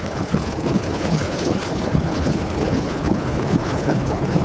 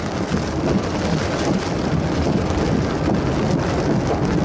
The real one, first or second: second